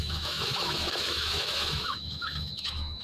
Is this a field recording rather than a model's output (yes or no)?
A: no